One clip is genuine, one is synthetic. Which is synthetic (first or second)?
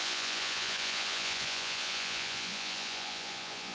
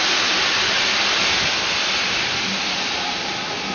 first